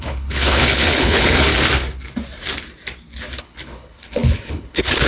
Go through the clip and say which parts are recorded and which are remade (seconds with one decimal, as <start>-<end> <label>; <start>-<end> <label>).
0.0-1.5 remade; 1.5-3.4 recorded; 3.4-5.1 remade